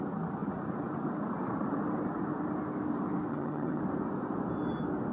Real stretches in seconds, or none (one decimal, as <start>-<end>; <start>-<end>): 0.0-3.3; 3.8-5.1